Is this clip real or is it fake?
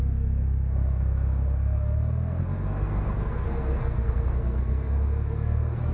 fake